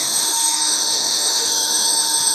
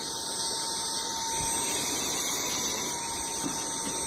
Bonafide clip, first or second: second